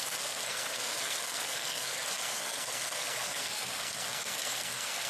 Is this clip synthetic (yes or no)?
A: yes